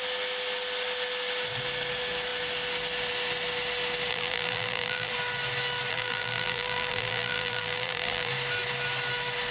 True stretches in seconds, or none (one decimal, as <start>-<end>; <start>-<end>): 0.0-4.1; 5.1-5.9; 8.3-9.5